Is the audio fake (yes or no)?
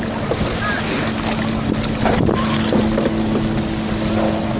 no